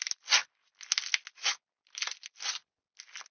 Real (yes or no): yes